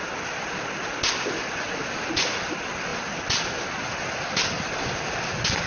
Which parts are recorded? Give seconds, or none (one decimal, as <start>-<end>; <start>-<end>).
0.0-5.7